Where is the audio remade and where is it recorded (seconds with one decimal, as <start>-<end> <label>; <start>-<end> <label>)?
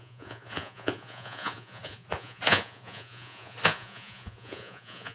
0.0-5.1 remade